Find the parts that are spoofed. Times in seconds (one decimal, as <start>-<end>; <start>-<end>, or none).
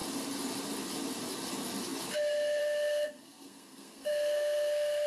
2.6-5.1